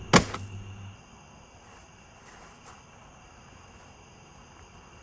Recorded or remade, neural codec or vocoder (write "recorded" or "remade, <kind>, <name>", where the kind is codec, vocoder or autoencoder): recorded